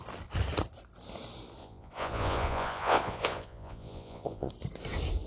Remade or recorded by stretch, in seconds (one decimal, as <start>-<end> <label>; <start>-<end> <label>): 0.0-1.6 recorded; 1.6-4.5 remade; 4.5-5.3 recorded

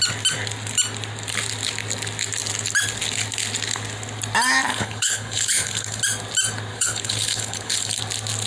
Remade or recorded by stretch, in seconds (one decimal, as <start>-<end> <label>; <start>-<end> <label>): 0.0-4.7 recorded; 4.7-6.0 remade; 6.0-6.7 recorded; 6.7-8.0 remade; 8.0-8.5 recorded

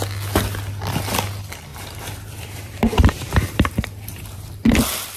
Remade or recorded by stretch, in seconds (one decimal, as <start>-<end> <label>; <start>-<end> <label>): 0.0-1.7 recorded; 1.7-4.5 remade; 4.5-5.2 recorded

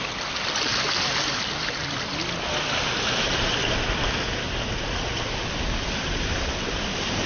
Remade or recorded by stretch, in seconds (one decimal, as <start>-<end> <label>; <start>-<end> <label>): 0.0-7.3 recorded

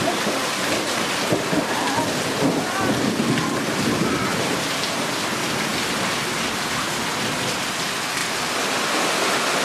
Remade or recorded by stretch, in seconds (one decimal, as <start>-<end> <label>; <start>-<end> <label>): 0.0-9.6 recorded

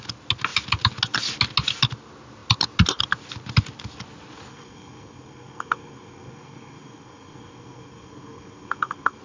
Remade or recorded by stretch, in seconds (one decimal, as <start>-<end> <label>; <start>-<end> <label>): 0.0-4.5 recorded; 4.5-9.2 remade